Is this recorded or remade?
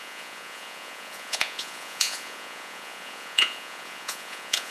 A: remade